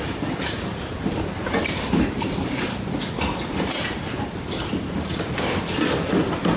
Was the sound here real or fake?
fake